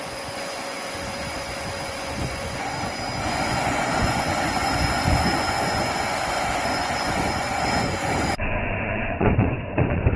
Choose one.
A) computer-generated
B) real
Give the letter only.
A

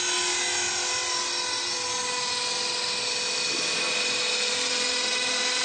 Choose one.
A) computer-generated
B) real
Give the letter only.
B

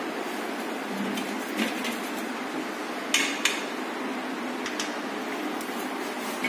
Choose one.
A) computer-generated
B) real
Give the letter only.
B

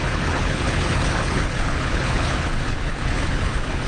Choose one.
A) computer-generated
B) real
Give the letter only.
A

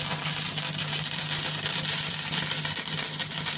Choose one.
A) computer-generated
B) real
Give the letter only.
B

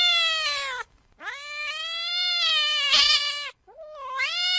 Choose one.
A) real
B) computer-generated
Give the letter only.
A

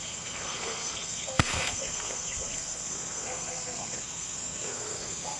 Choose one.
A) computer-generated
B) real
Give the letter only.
A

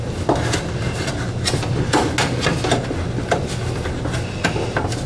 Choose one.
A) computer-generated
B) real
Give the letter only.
B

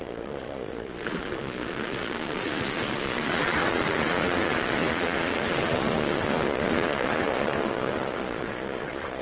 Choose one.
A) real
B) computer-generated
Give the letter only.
B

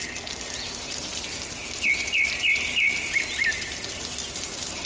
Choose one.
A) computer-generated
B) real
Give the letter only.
B